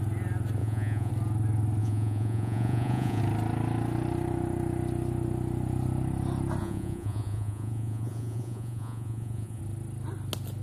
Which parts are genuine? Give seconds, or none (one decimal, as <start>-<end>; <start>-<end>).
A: 0.0-0.6; 1.1-1.8; 3.2-6.6; 9.6-10.6